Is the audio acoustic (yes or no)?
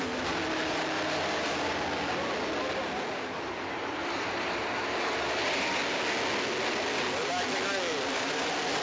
yes